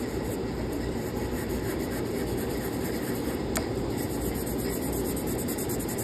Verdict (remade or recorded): remade